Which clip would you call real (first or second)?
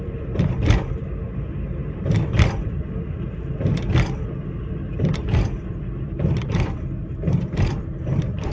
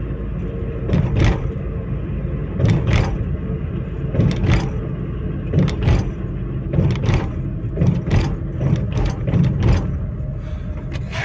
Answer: second